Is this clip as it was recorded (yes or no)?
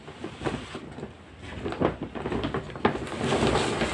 yes